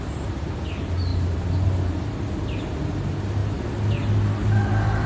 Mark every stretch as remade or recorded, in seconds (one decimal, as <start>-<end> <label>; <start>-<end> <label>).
0.0-1.1 recorded; 1.1-2.0 remade; 2.0-5.1 recorded